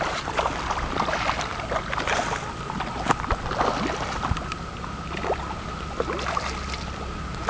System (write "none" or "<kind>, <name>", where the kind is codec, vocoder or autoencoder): none